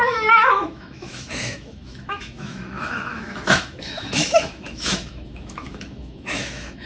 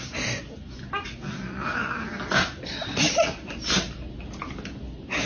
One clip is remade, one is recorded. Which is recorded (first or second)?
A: second